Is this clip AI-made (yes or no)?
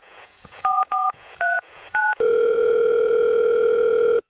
yes